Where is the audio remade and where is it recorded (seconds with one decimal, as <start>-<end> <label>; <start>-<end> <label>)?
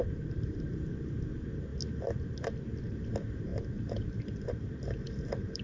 0.0-0.7 remade; 0.7-3.5 recorded; 3.5-5.6 remade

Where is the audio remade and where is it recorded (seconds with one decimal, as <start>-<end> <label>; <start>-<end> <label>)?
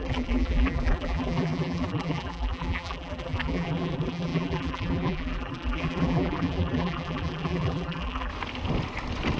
0.0-8.3 remade; 8.3-9.4 recorded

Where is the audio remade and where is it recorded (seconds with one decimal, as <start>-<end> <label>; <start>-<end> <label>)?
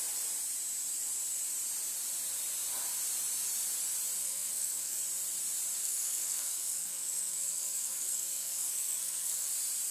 0.0-4.2 recorded; 4.2-5.0 remade; 5.0-5.8 recorded; 5.8-9.5 remade; 9.5-9.9 recorded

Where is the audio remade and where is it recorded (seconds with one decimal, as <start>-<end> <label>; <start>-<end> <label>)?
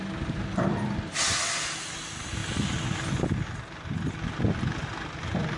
0.0-5.6 recorded